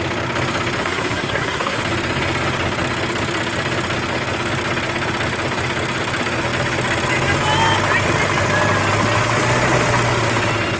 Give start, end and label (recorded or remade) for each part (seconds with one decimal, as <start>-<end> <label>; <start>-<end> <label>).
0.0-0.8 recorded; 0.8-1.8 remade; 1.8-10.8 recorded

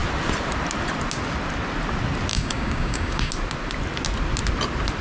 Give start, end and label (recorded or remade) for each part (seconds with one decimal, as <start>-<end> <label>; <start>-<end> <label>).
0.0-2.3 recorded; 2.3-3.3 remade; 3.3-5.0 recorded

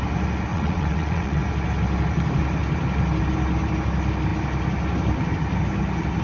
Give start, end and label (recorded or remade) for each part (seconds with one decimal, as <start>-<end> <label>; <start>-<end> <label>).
0.0-0.5 recorded; 0.5-1.4 remade; 1.4-6.2 recorded

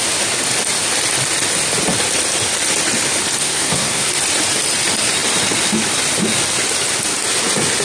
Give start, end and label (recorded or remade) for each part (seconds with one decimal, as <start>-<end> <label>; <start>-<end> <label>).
0.0-3.4 recorded; 3.4-4.1 remade; 4.1-7.8 recorded